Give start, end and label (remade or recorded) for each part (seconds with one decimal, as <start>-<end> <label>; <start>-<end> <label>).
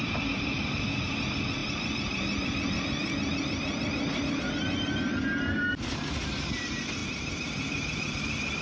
0.0-7.0 recorded; 7.0-8.2 remade; 8.2-8.6 recorded